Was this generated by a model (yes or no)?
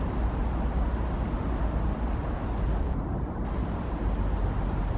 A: no